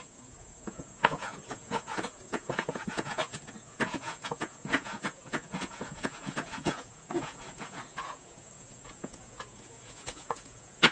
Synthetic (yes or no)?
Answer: yes